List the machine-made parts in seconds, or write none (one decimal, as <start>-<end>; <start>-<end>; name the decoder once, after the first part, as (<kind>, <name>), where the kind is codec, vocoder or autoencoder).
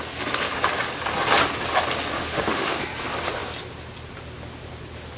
2.1-2.8 (autoencoder, DAC-VAE)